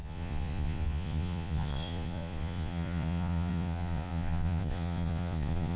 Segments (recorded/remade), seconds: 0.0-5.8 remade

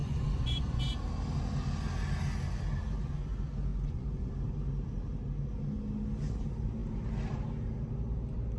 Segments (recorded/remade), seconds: 0.0-0.9 remade; 0.9-3.7 recorded; 3.7-4.3 remade; 4.3-8.6 recorded

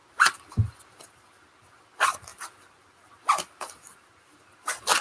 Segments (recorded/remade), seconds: 0.0-5.0 recorded